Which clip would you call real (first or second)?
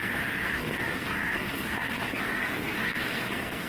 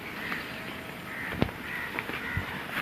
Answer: second